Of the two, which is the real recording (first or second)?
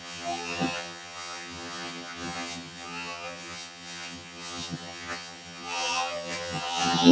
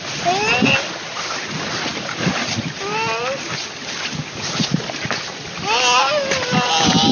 second